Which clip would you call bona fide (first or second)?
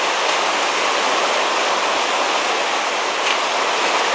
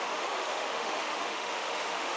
first